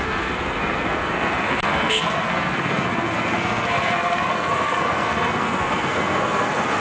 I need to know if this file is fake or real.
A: fake